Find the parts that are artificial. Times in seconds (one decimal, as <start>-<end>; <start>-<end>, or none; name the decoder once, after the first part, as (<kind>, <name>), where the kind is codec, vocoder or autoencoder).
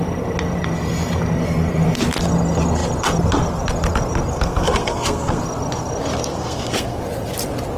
4.3-5.4 (codec, SNAC); 6.3-7.0